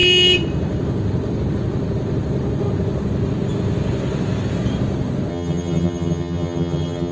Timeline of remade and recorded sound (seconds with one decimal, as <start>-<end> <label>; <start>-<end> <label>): 0.0-5.3 recorded; 5.3-7.1 remade